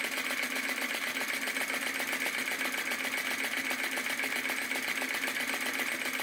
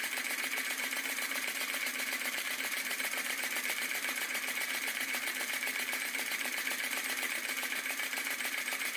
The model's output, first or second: second